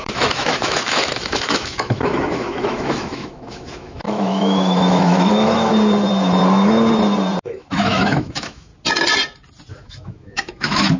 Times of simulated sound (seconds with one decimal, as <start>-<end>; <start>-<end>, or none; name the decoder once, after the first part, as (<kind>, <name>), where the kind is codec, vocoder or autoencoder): 0.0-5.7 (autoencoder, DAC-VAE); 7.4-8.7; 9.7-11.0